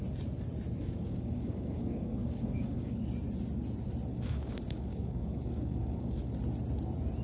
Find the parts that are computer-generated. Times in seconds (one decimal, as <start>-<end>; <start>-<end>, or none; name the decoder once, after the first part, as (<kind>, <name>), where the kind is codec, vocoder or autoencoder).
0.8-3.0 (codec, DAC); 4.1-6.3